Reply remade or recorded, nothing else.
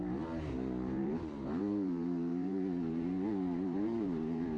remade